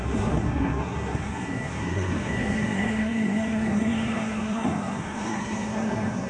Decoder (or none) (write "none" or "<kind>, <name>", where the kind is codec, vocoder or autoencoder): codec, SNAC